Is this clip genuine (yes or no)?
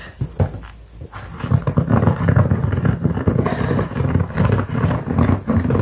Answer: yes